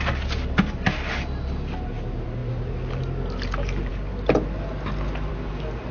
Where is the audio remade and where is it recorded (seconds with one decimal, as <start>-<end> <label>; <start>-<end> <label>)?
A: 0.0-5.9 recorded